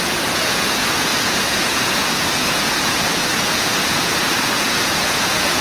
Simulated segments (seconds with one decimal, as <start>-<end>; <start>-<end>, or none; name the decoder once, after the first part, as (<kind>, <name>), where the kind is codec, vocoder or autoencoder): 0.0-5.6 (vocoder, Vocos)